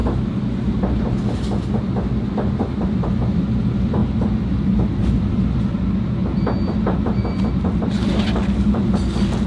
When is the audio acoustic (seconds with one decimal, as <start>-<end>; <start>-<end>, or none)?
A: 0.0-9.5